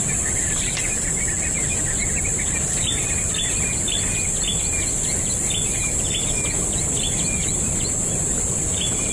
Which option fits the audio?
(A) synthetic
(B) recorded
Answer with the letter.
B